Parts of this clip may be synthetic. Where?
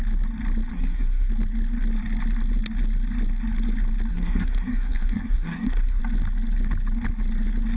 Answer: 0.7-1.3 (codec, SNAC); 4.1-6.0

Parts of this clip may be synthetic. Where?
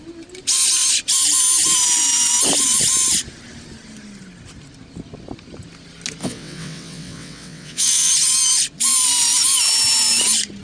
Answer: 6.2-8.1 (vocoder, WaveNeXt)